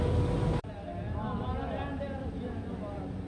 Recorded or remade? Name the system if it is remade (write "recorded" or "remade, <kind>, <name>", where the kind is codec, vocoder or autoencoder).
recorded